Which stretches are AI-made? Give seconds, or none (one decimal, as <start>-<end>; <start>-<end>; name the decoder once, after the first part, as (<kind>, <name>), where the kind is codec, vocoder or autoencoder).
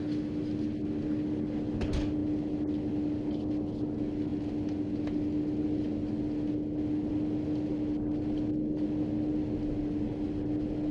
none